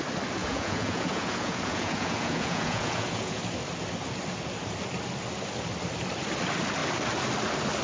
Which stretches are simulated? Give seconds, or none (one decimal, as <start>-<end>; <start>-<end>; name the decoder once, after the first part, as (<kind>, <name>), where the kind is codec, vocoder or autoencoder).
0.4-3.4 (vocoder, Vocos)